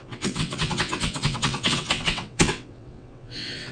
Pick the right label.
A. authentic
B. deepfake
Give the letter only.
B